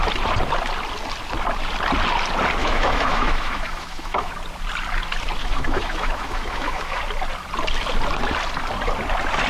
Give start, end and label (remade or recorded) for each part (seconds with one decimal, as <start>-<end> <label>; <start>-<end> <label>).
0.0-2.6 recorded; 2.6-4.3 remade; 4.3-5.4 recorded; 5.4-7.0 remade; 7.0-9.5 recorded